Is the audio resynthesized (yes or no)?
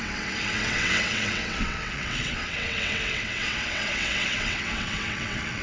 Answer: yes